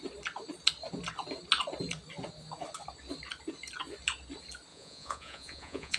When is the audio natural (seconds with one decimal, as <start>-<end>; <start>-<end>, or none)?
0.0-4.7